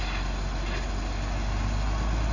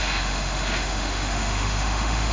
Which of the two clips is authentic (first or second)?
first